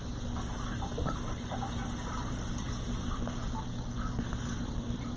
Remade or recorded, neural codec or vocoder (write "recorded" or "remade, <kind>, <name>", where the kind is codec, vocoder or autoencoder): recorded